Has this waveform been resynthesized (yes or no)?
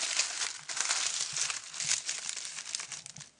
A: no